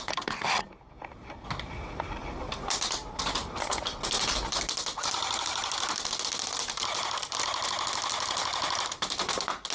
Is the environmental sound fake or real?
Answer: real